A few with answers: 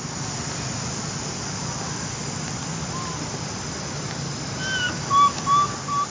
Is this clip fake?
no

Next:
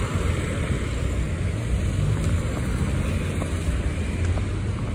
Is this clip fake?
no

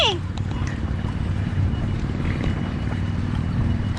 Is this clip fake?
yes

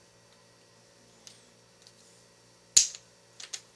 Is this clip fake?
no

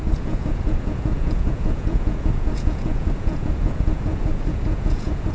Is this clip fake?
yes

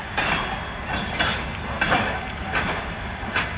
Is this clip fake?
no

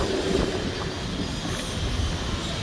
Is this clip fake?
no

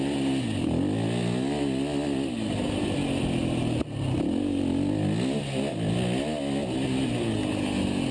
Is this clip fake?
no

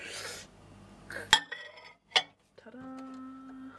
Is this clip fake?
no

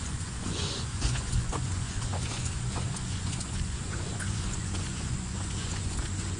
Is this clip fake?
yes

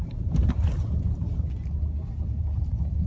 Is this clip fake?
no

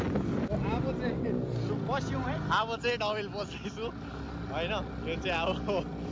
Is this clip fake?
no